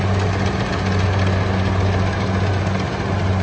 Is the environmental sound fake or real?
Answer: real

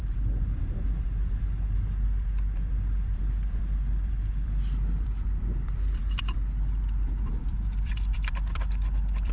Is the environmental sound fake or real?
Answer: real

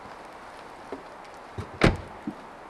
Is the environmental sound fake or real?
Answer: real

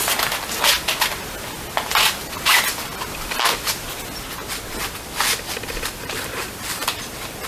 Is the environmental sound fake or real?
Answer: real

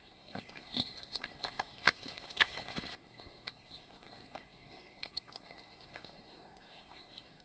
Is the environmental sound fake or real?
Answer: fake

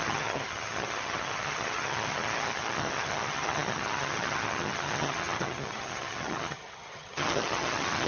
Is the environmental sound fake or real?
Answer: fake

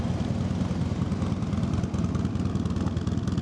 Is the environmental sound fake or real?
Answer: real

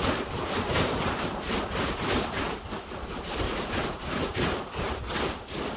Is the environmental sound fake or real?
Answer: real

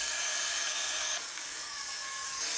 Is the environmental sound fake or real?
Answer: fake